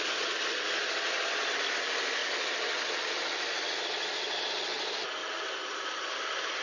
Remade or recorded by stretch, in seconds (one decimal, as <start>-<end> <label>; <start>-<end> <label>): 0.0-2.2 recorded; 2.2-4.4 remade; 4.4-5.2 recorded; 5.2-6.6 remade